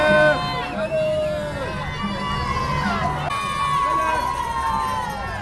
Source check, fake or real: real